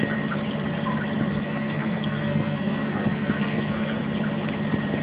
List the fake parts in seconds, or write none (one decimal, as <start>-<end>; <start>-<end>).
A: 1.3-4.0